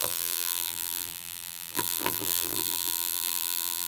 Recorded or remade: remade